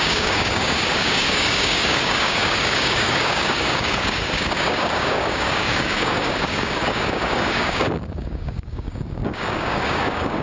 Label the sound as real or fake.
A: fake